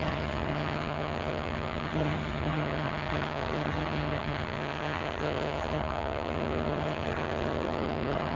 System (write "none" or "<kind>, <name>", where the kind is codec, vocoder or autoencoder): vocoder, HiFi-GAN